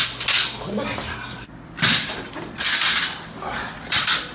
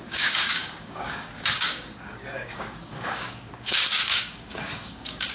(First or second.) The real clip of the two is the first